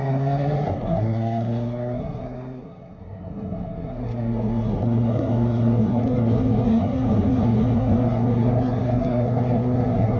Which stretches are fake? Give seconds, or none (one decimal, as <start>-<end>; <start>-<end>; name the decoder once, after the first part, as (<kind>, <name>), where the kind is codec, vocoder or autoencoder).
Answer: 0.0-10.2 (codec, SNAC)